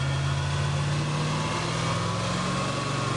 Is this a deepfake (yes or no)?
no